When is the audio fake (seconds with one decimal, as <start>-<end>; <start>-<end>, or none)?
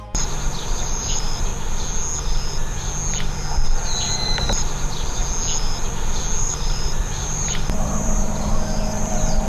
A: 0.0-1.5; 4.5-5.2; 6.4-8.5; 9.1-9.5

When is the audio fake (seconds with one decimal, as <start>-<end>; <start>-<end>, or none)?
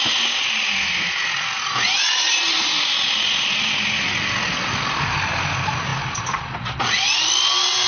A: none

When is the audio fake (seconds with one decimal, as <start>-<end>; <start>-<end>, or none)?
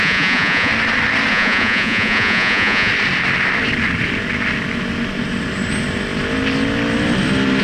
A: 0.0-0.7; 1.3-2.9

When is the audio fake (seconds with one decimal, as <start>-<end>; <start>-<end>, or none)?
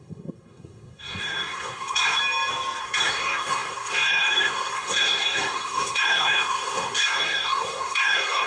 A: 0.0-2.2; 2.8-8.5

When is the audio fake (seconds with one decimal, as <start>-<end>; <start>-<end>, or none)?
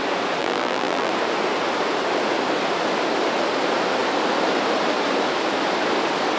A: 0.4-1.1